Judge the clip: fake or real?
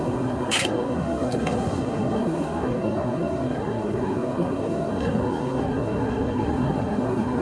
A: fake